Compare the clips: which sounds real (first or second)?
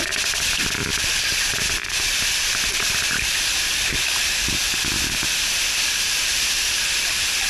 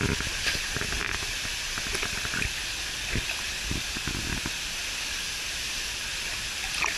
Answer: second